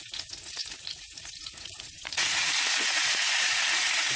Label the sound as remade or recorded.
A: remade